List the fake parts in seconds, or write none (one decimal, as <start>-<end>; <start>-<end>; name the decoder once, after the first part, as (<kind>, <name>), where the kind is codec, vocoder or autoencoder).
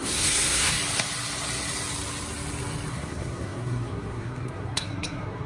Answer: 0.0-0.8 (codec, SNAC); 2.9-5.5